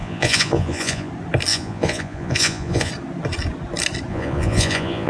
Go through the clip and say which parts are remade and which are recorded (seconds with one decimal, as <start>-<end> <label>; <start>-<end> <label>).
0.0-1.1 remade; 1.1-1.5 recorded; 1.5-2.9 remade; 2.9-4.1 recorded; 4.1-5.1 remade